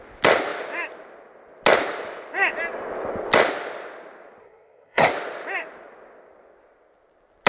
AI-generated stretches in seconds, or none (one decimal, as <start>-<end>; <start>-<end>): 4.4-5.1